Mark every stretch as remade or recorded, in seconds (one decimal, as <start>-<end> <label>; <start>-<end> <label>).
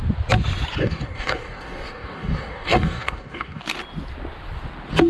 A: 0.0-0.8 recorded; 0.8-3.6 remade; 3.6-5.1 recorded